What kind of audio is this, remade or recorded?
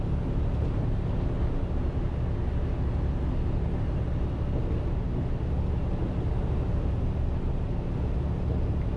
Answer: recorded